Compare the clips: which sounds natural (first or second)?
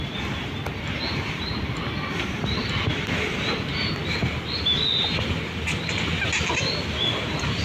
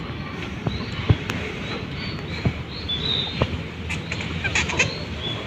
first